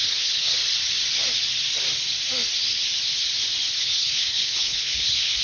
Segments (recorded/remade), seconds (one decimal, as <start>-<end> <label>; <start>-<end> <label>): 0.0-0.6 remade; 0.6-3.8 recorded; 3.8-5.4 remade